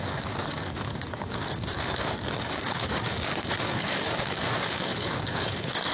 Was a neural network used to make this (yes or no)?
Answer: yes